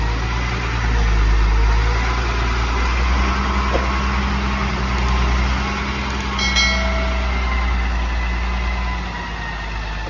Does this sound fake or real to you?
real